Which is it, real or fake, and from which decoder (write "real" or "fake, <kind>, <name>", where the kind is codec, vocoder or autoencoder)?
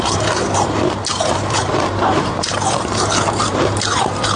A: fake, vocoder, BigVGAN v2